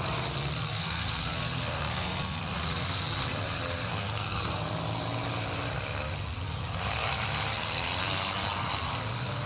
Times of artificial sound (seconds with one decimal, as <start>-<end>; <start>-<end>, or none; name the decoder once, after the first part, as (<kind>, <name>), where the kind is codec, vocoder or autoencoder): 0.7-2.4 (codec, SNAC); 3.9-4.5; 8.0-9.0